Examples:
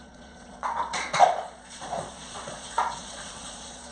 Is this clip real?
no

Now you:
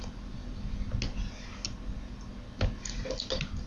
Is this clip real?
yes